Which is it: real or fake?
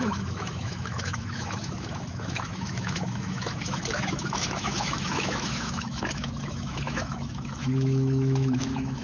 fake